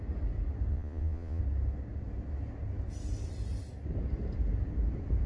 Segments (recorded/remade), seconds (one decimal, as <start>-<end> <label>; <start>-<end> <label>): 0.0-0.7 recorded; 0.7-1.4 remade; 1.4-5.3 recorded